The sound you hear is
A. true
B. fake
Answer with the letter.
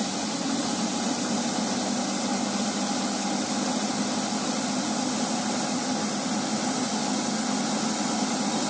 A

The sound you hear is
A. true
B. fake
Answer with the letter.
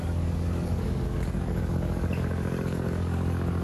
B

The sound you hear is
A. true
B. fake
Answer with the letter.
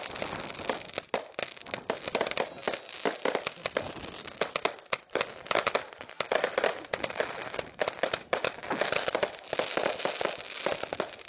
A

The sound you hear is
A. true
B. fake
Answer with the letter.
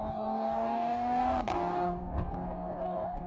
B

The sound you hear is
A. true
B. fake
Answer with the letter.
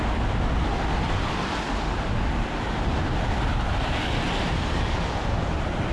A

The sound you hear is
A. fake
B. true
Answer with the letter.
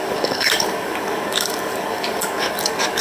A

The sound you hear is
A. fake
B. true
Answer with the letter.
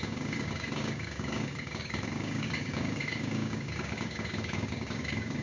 A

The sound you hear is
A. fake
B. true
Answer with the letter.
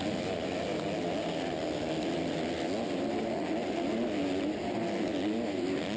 B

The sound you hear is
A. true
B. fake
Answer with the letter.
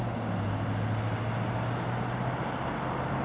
A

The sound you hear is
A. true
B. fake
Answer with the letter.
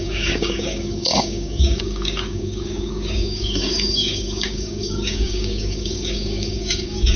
B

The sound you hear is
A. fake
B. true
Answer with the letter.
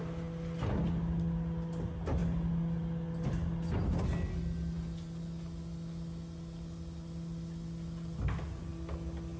B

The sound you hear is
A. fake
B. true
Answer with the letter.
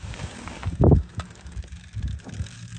A